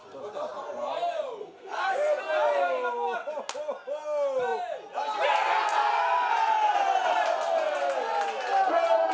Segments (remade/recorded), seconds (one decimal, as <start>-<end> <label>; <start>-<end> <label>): 0.0-1.4 recorded; 1.4-2.2 remade; 2.2-9.1 recorded